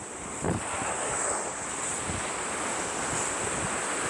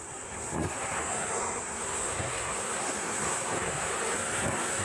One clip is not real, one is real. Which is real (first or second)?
first